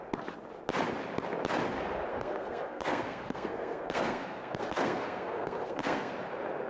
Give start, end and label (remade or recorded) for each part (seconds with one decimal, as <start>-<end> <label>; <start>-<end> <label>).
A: 0.0-2.1 recorded; 2.1-6.1 remade; 6.1-6.7 recorded